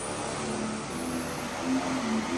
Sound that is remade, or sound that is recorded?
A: recorded